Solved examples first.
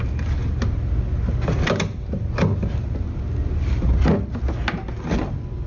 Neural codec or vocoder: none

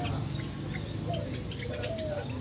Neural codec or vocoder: none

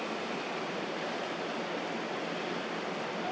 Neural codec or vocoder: none